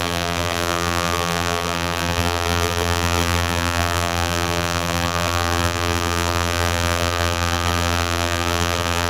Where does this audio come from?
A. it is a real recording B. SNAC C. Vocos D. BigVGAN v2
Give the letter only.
D